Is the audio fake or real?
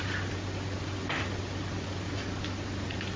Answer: real